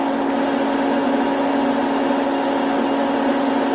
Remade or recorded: recorded